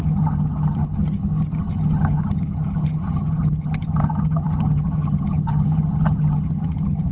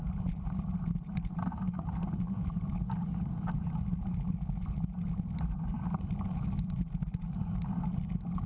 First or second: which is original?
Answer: second